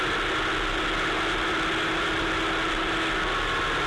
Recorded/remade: recorded